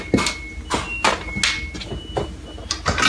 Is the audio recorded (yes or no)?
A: yes